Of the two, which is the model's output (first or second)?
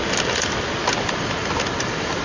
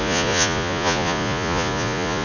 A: second